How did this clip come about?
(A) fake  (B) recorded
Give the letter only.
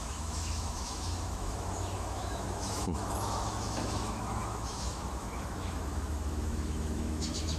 A